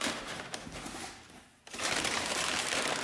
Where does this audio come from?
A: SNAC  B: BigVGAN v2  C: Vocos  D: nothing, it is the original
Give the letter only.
B